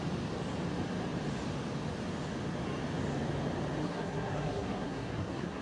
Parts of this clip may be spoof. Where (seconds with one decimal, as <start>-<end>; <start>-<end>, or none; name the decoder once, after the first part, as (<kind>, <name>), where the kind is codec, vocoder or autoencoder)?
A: 3.8-5.6 (codec, SNAC)